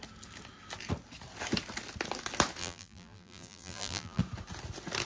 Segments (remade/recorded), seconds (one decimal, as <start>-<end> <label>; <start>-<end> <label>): 0.0-2.6 recorded; 2.6-4.2 remade; 4.2-5.0 recorded

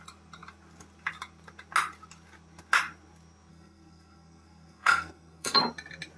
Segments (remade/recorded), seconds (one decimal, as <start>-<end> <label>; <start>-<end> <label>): 0.0-3.5 recorded; 3.5-5.6 remade; 5.6-6.2 recorded

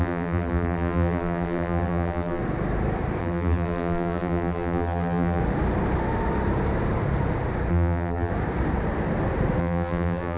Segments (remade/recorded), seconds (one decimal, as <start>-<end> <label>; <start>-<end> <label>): 0.0-2.4 remade; 2.4-3.2 recorded; 3.2-5.4 remade; 5.4-7.7 recorded; 7.7-8.3 remade; 8.3-9.6 recorded; 9.6-10.4 remade

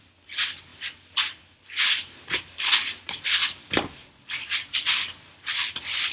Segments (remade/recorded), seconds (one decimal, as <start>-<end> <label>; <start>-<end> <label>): 0.0-6.1 recorded

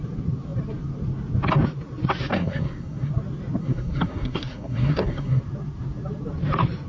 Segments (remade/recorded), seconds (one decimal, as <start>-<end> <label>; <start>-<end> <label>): 0.0-2.3 recorded; 2.3-3.1 remade; 3.1-3.6 recorded; 3.6-5.4 remade; 5.4-6.9 recorded